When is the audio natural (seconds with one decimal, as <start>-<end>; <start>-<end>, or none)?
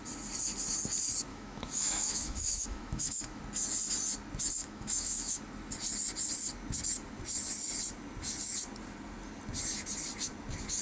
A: 0.0-1.3; 3.4-4.6; 5.4-10.8